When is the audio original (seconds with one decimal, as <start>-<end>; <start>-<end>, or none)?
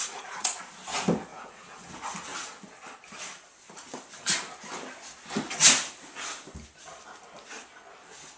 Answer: 0.6-1.3; 1.9-8.4